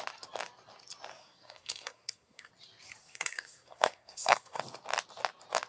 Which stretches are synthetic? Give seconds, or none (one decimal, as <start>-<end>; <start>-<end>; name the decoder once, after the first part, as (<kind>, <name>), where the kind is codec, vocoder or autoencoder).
1.1-2.5 (codec, SNAC); 3.0-4.6